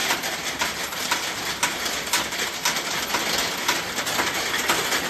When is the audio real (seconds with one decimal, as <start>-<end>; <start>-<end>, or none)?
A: 0.0-5.1